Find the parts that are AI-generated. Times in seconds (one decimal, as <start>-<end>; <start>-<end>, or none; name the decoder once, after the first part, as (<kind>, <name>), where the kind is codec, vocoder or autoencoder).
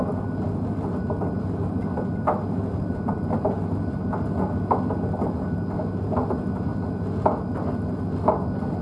none